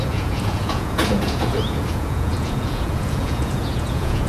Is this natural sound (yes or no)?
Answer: no